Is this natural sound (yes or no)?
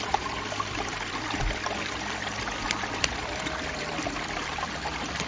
no